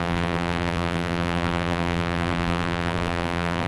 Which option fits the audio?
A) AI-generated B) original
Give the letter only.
A